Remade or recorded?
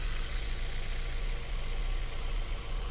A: remade